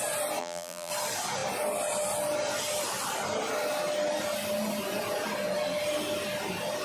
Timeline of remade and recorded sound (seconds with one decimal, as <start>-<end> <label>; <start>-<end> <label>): 0.0-0.4 recorded; 0.4-0.9 remade; 0.9-6.8 recorded